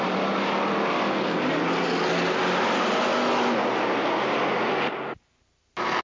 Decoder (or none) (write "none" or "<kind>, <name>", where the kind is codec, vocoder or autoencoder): none